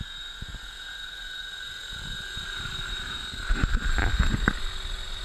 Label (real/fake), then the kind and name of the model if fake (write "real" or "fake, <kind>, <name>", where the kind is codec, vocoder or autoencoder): real